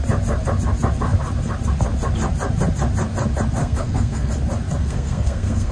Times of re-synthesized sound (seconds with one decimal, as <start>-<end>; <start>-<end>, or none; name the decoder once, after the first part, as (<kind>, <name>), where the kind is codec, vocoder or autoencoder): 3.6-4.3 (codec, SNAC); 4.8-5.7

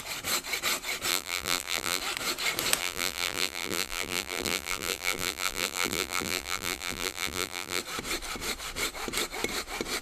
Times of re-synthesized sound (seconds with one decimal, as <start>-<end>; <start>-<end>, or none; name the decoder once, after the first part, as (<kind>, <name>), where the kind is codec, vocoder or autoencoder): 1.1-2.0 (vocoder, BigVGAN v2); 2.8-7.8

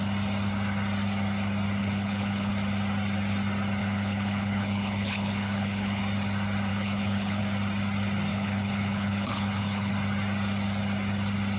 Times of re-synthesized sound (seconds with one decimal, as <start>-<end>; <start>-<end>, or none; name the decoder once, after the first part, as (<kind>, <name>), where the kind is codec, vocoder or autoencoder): 1.8-2.5 (codec, HILCodec); 3.8-6.0; 6.7-7.4; 8.3-9.9

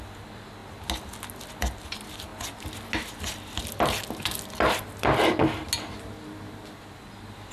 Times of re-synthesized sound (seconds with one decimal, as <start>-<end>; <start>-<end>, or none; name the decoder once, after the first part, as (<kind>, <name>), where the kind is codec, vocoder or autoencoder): none

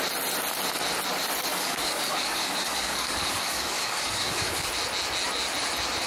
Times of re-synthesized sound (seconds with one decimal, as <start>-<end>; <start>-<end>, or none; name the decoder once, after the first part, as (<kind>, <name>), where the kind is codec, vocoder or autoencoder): 1.5-4.7 (codec, DAC)